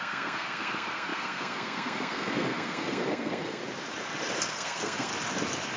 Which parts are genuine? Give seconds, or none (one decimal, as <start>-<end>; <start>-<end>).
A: 3.6-4.5; 5.1-5.8